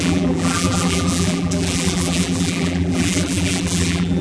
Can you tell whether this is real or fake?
fake